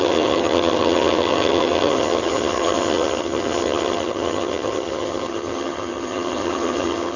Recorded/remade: remade